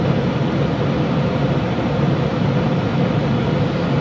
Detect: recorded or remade recorded